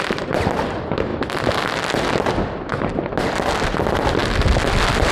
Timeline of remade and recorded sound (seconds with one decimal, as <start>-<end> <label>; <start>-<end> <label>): 0.0-5.1 recorded